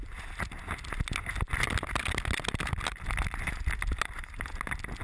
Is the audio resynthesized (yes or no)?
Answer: no